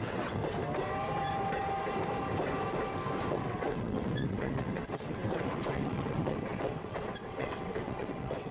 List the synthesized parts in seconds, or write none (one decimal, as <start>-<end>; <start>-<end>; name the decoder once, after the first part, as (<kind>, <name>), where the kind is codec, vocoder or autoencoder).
0.0-0.4 (vocoder, WaveNeXt); 3.3-8.5